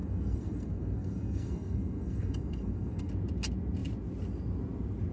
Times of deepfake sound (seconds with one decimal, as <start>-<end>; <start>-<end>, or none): 0.0-3.1